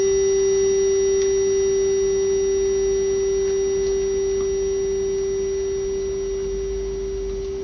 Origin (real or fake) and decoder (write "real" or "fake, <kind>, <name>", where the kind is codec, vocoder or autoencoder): real